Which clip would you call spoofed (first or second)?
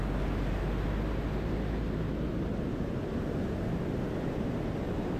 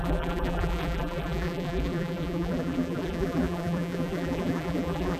second